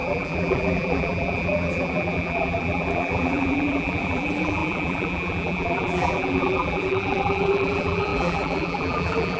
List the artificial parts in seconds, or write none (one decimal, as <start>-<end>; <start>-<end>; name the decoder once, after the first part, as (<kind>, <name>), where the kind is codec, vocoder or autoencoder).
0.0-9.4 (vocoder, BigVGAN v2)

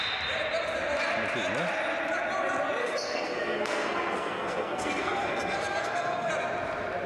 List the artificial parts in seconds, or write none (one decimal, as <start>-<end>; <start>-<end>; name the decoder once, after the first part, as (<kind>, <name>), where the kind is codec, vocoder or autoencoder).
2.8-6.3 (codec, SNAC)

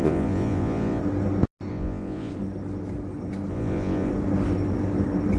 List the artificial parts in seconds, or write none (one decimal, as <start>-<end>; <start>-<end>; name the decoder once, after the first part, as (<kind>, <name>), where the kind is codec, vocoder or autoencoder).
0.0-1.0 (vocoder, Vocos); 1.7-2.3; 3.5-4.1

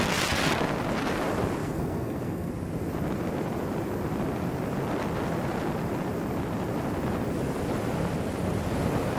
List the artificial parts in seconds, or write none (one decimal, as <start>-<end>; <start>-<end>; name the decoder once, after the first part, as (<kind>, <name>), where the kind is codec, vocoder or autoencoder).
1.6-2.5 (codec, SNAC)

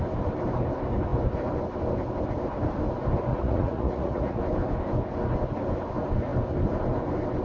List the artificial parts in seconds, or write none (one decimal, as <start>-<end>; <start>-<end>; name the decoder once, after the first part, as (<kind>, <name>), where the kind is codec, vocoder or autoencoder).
3.3-4.4 (vocoder, Vocos)